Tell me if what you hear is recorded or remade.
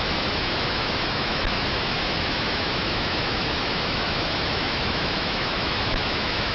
remade